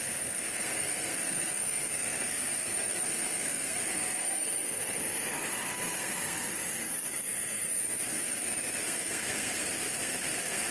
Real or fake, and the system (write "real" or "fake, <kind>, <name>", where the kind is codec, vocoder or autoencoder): fake, codec, SNAC